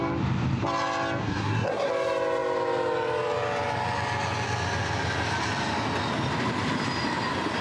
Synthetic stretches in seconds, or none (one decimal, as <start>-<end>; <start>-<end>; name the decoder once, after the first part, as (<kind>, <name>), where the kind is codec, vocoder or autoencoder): 1.2-1.9 (codec, SNAC)